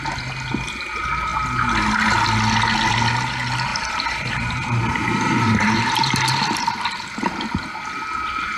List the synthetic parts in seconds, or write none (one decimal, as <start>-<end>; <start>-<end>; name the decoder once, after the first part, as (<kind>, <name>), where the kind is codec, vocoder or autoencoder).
3.7-6.1 (vocoder, BigVGAN v2)